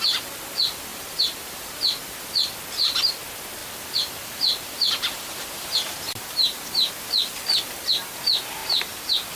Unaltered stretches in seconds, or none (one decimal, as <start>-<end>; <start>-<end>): 0.0-0.9; 1.8-3.6; 6.9-8.6